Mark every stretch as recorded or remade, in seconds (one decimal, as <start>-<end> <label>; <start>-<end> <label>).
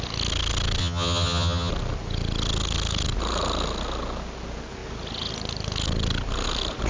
0.0-0.8 recorded; 0.8-1.7 remade; 1.7-6.9 recorded